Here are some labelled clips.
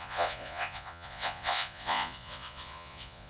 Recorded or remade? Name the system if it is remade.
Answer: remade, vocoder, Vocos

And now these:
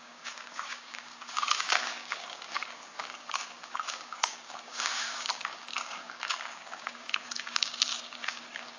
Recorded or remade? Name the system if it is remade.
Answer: remade, codec, DAC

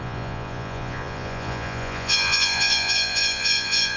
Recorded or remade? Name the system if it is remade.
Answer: remade, vocoder, Vocos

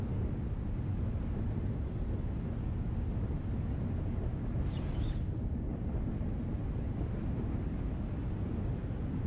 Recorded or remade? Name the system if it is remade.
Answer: recorded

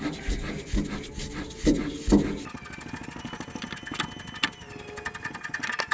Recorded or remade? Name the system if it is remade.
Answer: recorded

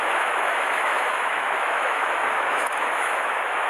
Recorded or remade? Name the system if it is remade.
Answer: remade, autoencoder, DAC-VAE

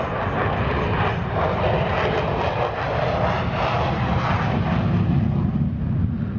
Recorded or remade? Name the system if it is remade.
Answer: recorded